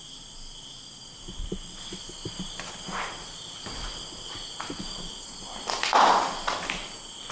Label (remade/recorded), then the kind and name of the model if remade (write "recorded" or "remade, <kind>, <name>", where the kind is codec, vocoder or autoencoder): recorded